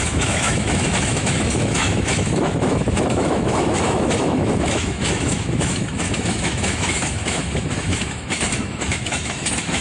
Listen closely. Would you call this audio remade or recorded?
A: remade